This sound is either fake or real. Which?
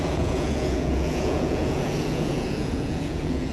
fake